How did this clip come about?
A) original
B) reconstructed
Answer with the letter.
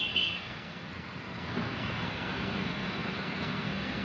B